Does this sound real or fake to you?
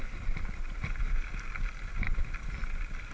fake